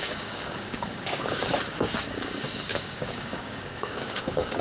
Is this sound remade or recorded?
remade